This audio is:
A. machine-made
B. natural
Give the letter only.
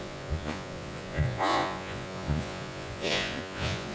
A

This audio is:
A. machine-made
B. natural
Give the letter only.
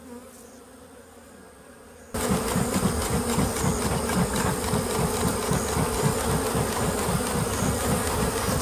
B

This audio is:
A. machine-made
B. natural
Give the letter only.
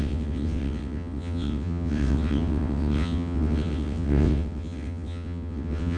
A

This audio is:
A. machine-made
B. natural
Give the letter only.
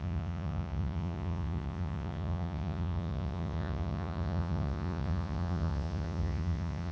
A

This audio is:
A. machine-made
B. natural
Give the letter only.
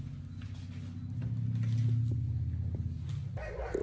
B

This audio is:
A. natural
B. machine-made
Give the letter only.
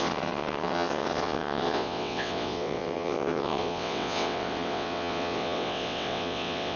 B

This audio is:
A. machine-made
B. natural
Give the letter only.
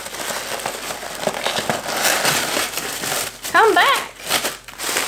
B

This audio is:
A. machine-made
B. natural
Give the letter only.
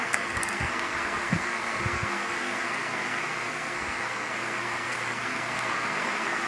A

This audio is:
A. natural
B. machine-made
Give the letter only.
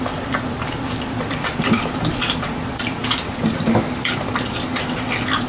B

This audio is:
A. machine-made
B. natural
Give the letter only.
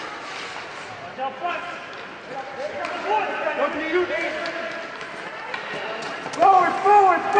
B